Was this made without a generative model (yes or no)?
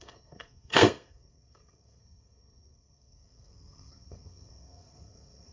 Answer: no